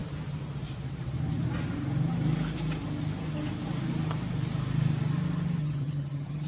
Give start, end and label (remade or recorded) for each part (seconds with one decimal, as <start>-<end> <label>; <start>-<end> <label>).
0.0-5.6 recorded; 5.6-6.5 remade